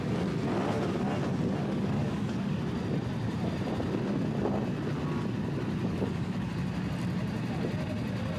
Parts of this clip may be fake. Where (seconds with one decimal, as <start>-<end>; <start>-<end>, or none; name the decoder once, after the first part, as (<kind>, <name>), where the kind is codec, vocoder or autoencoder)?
1.6-2.6 (codec, DAC); 5.8-6.5